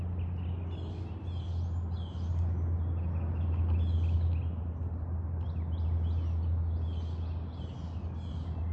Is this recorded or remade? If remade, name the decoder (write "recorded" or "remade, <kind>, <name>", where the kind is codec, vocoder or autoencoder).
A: recorded